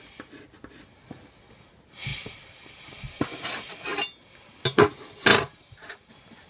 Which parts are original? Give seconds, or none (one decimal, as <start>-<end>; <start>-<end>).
0.0-2.1; 3.3-5.3; 6.1-6.5